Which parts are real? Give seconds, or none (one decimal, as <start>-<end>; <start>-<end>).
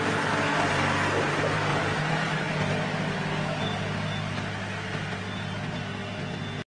0.0-1.7; 2.4-6.7